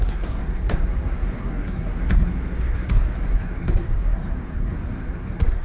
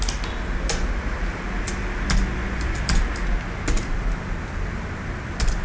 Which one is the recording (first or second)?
second